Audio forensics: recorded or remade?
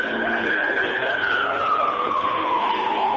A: remade